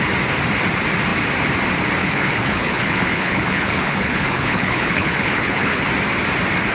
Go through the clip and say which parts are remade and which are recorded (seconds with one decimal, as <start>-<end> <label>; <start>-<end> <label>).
0.0-2.0 recorded; 2.0-5.8 remade; 5.8-6.7 recorded